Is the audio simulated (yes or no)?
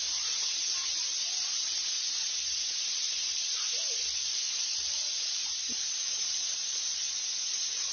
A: yes